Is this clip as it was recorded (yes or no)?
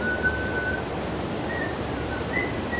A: no